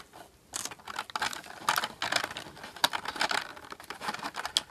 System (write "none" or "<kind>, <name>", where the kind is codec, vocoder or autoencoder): none